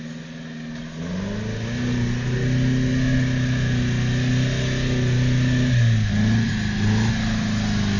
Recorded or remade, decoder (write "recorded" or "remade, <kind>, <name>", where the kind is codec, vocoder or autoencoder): recorded